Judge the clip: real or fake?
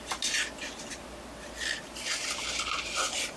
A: fake